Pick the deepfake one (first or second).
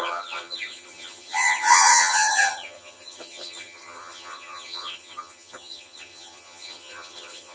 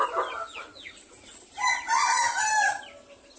first